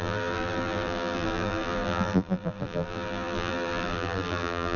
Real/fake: fake